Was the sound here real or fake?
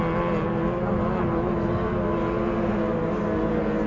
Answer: real